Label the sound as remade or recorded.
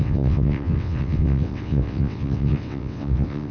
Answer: remade